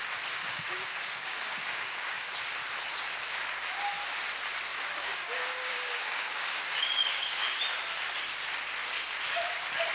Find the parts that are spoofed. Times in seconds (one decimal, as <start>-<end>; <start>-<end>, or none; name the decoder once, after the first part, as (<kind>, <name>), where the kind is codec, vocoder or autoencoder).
0.4-2.3 (codec, DAC); 4.7-7.6